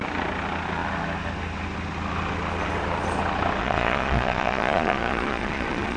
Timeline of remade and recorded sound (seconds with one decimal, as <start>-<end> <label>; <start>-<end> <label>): 0.0-3.6 recorded; 3.6-6.0 remade